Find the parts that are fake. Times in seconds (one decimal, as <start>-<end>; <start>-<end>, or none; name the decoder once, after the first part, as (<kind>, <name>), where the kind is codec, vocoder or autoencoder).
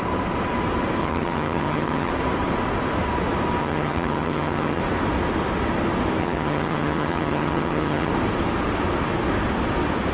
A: 1.0-2.1 (vocoder, HiFi-GAN); 3.6-4.8; 6.2-8.1